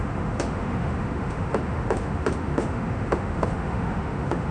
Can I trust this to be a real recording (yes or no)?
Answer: no